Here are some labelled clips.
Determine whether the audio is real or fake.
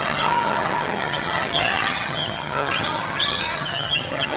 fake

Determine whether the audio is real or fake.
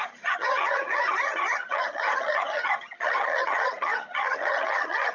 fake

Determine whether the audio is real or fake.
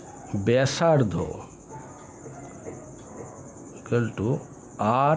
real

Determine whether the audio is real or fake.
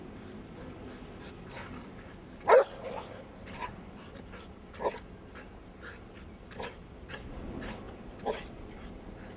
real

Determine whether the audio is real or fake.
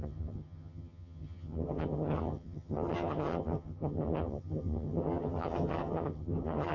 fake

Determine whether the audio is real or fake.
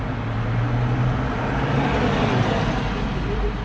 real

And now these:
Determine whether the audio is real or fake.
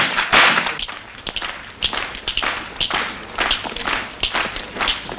real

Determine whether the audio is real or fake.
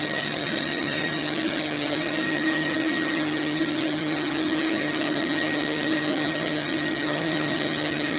fake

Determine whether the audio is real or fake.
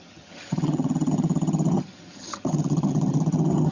fake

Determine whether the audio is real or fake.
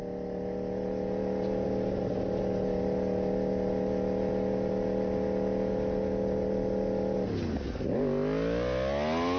real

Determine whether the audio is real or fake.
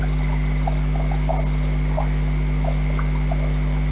real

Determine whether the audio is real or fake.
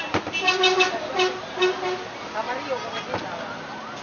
real